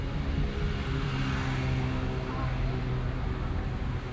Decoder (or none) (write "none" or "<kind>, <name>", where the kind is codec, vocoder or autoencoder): none